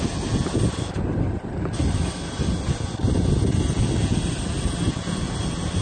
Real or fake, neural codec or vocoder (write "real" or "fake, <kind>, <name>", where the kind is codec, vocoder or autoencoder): real